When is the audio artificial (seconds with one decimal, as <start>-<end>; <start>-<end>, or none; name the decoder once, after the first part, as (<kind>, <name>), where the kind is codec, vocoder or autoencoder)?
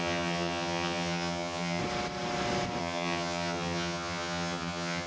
0.0-1.8 (vocoder, HiFi-GAN); 2.8-5.1